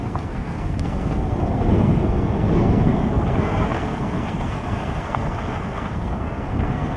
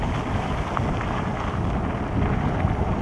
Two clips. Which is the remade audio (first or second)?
first